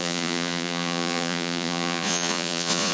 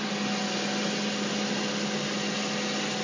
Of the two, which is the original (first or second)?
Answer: second